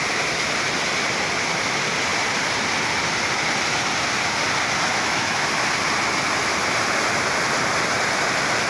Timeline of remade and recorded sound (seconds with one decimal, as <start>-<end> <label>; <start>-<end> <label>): 0.0-4.9 recorded; 4.9-5.5 remade; 5.5-8.7 recorded